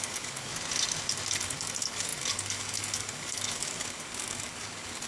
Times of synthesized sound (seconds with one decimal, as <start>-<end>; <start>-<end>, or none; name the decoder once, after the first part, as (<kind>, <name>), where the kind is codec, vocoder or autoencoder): 0.0-0.5 (codec, DAC); 1.3-5.1